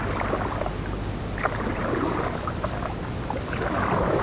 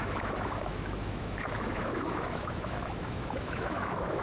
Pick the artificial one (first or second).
second